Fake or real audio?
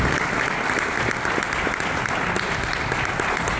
real